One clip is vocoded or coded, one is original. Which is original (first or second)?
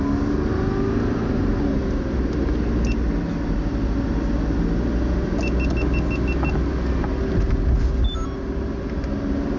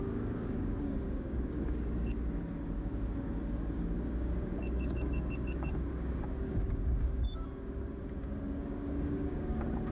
first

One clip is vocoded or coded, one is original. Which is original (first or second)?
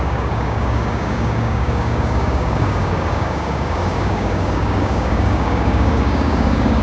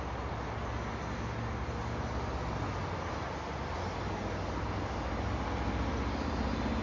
second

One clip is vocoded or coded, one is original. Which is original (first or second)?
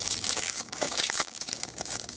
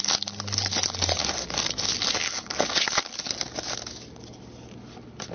second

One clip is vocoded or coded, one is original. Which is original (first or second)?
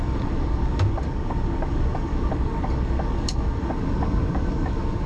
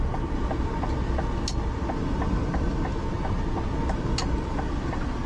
second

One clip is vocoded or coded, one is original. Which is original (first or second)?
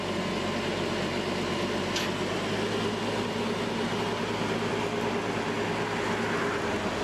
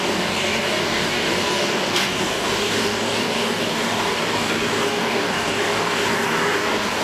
first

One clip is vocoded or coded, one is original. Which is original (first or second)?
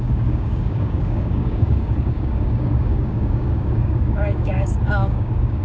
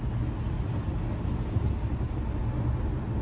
second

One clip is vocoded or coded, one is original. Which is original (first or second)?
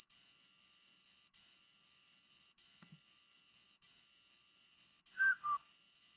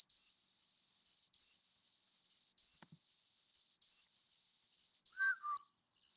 second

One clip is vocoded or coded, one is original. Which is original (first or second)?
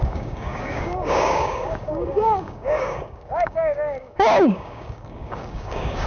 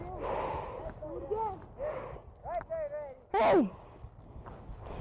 second